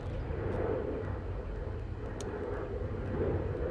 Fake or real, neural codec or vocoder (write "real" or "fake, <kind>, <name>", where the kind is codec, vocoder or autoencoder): real